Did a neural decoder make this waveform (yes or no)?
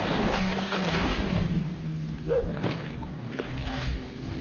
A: yes